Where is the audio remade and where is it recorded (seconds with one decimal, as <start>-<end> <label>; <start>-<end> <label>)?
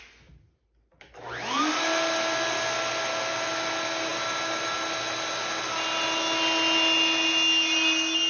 0.0-8.3 recorded